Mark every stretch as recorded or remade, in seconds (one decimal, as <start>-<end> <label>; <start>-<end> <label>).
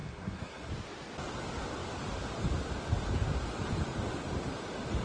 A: 0.0-0.7 remade; 0.7-5.0 recorded